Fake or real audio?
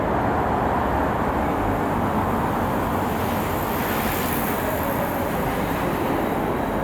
real